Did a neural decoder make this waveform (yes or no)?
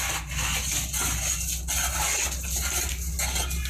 no